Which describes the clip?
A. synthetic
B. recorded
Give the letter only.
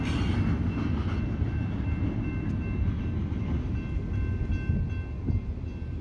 B